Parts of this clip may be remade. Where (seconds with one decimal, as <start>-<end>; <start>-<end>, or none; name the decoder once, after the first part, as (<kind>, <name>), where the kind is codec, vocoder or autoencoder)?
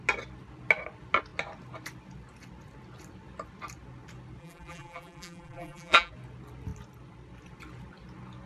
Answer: 4.4-6.1 (vocoder, BigVGAN v2)